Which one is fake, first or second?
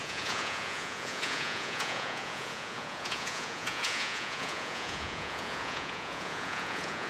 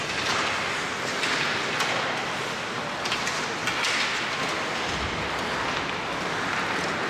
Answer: first